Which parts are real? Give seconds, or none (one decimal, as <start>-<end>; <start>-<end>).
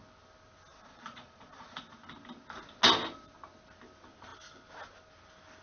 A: 0.0-0.7; 1.8-5.6